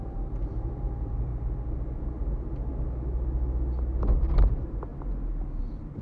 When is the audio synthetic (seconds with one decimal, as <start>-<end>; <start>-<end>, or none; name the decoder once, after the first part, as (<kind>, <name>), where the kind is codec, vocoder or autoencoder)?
0.0-1.3 (vocoder, BigVGAN v2); 2.3-2.7; 4.2-4.9; 5.6-6.0